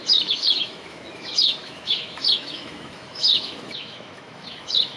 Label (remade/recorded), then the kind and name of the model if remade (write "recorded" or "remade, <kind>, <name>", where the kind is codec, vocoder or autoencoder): remade, autoencoder, DAC-VAE